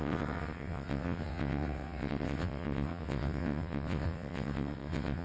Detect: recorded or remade remade